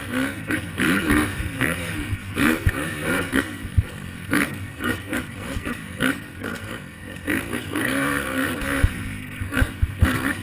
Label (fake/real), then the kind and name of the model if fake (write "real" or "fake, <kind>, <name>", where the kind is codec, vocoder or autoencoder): fake, codec, SNAC